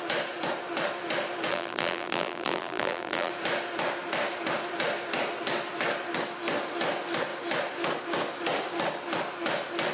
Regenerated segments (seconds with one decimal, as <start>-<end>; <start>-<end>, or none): 1.5-3.3